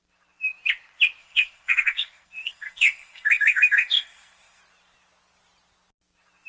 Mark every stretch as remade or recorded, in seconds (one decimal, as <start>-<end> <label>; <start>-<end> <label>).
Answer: 0.0-1.2 recorded; 1.2-4.6 remade; 4.6-6.5 recorded